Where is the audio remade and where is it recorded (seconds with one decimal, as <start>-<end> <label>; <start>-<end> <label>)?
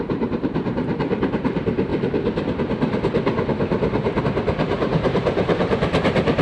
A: 0.0-1.9 remade; 1.9-4.2 recorded; 4.2-6.4 remade